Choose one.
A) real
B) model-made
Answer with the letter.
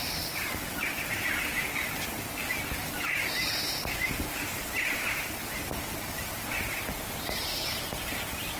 B